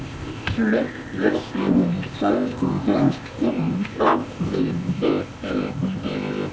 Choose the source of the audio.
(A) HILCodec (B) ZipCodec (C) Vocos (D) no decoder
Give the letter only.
B